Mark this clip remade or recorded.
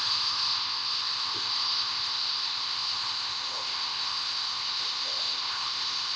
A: remade